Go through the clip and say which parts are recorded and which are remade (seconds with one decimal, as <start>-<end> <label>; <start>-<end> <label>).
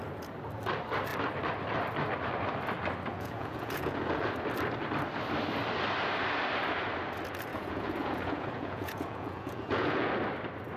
0.0-3.1 recorded; 3.1-4.2 remade; 4.2-7.5 recorded; 7.5-10.1 remade; 10.1-10.8 recorded